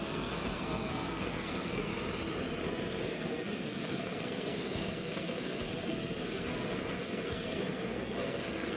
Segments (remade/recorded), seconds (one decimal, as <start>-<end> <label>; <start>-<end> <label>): 0.0-1.9 remade; 1.9-3.0 recorded; 3.0-8.8 remade

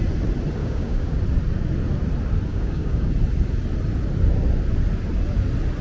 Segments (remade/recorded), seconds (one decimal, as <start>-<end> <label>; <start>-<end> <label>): 0.0-0.6 recorded; 0.6-1.2 remade; 1.2-2.5 recorded; 2.5-3.1 remade; 3.1-5.8 recorded

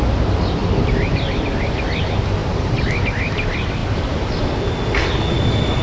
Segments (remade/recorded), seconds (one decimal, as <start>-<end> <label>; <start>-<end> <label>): 0.0-0.6 recorded; 0.6-1.3 remade; 1.3-5.8 recorded

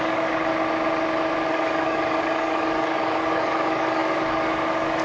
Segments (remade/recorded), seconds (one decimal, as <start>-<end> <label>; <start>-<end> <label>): 0.0-0.5 remade; 0.5-1.5 recorded; 1.5-5.0 remade

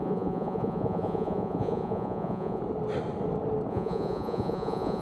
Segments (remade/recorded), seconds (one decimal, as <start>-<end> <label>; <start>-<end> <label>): 0.0-2.6 remade; 2.6-3.7 recorded; 3.7-5.0 remade

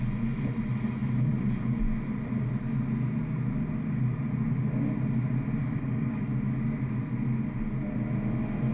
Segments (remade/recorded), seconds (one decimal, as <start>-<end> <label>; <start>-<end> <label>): 0.0-5.6 recorded; 5.6-6.2 remade; 6.2-8.7 recorded

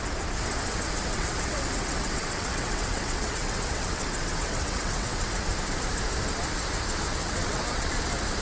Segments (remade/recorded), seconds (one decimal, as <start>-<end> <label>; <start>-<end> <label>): 0.0-1.1 recorded; 1.1-5.3 remade; 5.3-7.2 recorded; 7.2-7.9 remade; 7.9-8.4 recorded

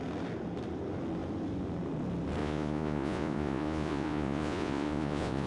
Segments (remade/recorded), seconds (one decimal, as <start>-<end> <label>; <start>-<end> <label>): 0.0-2.4 recorded; 2.4-5.5 remade